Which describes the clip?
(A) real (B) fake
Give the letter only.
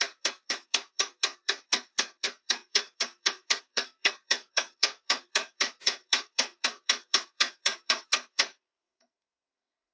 B